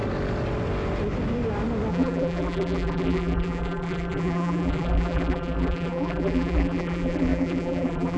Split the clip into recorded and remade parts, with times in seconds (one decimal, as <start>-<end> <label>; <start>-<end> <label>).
0.0-1.9 recorded; 1.9-8.2 remade